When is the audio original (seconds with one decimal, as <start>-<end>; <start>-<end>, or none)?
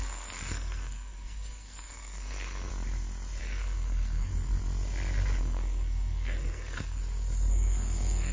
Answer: 2.7-3.4; 4.3-5.4; 7.0-7.5